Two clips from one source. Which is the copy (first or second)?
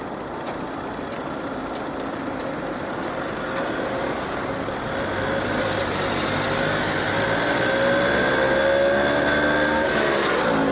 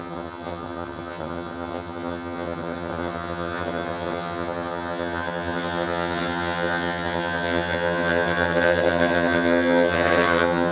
second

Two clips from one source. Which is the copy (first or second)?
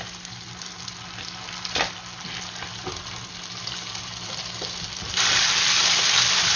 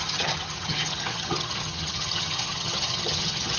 second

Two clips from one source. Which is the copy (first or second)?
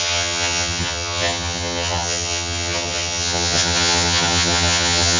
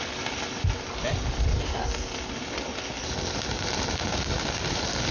first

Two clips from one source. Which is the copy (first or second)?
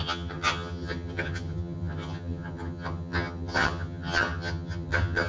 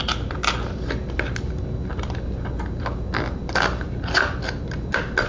first